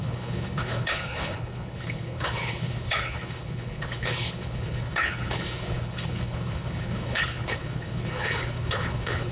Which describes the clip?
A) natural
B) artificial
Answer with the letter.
B